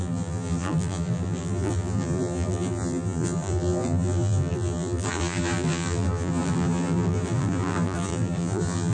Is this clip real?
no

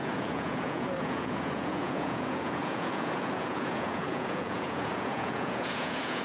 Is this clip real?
no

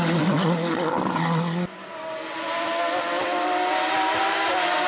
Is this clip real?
yes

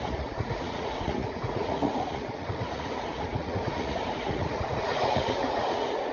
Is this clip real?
no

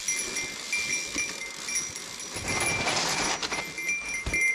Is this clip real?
yes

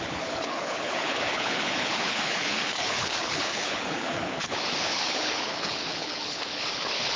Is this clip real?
no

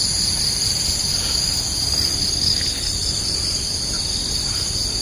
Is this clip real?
yes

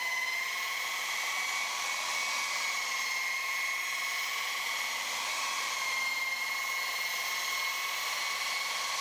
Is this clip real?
yes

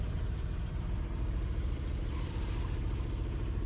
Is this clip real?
no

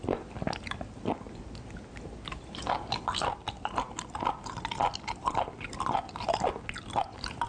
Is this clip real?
yes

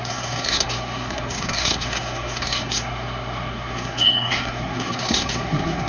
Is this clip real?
no